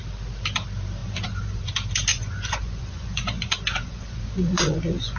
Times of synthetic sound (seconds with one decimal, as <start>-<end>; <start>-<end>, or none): 1.0-1.7; 2.1-5.2